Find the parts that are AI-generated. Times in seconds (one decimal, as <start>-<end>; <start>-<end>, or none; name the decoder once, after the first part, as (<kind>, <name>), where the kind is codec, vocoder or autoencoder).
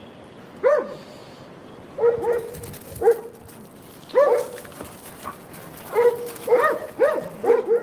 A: none